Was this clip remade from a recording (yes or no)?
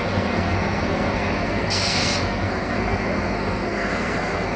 yes